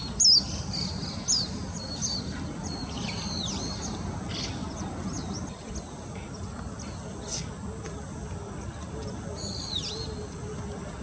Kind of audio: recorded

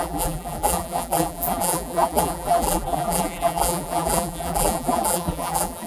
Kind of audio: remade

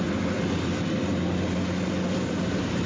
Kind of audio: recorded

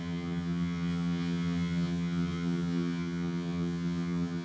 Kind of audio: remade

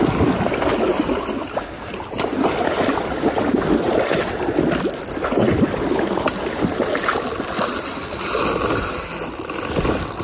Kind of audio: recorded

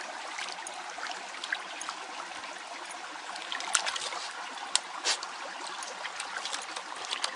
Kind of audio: recorded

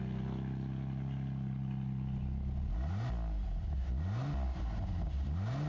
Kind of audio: recorded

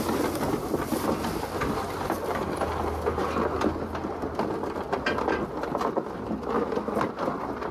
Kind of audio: recorded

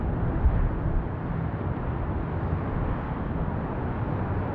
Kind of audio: recorded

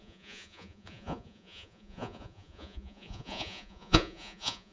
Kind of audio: remade